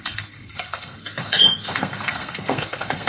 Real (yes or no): no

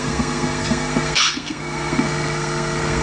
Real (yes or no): no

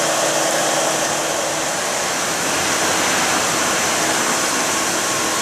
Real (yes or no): yes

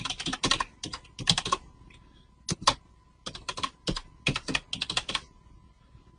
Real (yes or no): yes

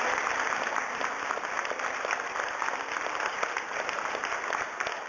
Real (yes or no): yes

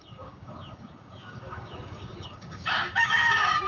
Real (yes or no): no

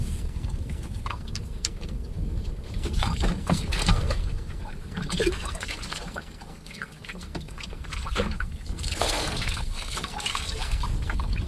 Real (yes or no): no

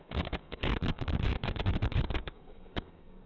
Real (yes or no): no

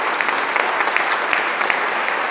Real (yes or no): yes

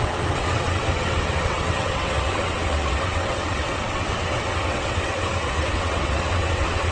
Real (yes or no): no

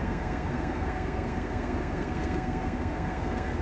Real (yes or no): no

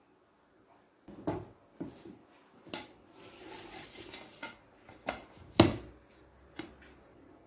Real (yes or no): yes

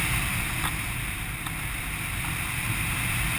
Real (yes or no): yes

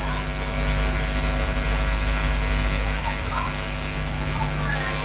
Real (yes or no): yes